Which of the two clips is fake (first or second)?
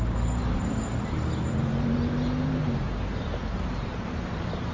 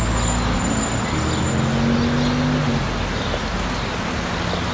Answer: first